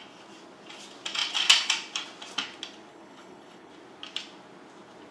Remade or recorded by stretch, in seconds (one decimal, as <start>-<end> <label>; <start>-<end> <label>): 0.0-2.9 recorded; 2.9-3.7 remade; 3.7-5.1 recorded